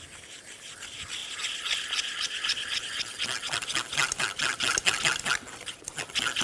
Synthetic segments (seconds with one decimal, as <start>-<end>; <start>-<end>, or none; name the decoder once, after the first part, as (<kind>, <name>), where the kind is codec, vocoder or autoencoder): none